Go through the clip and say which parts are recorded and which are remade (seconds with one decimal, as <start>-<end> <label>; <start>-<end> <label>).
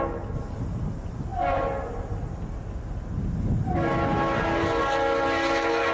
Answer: 0.0-5.9 recorded